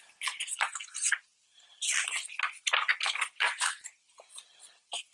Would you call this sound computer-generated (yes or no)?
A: no